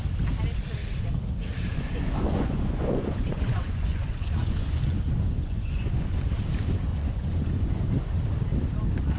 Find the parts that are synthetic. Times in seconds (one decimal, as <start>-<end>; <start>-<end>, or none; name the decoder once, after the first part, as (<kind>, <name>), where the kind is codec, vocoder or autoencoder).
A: 1.7-6.3 (vocoder, Vocos); 6.9-7.9